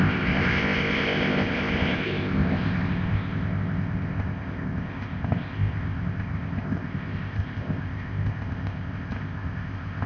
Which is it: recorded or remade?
remade